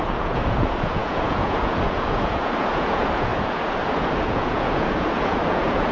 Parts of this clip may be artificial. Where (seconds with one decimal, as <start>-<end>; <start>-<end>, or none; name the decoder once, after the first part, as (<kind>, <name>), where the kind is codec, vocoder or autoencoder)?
0.0-5.9 (vocoder, Vocos)